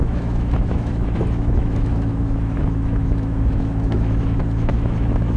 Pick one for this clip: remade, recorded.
remade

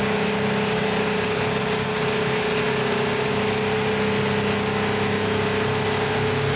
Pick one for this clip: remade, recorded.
recorded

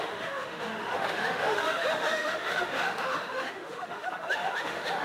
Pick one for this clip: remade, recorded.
remade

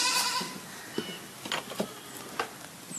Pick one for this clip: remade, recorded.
recorded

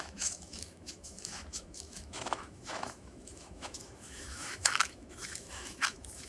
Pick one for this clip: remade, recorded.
remade